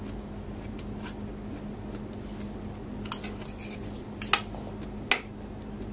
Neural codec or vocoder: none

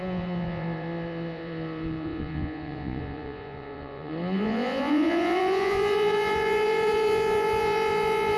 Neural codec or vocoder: vocoder, Vocos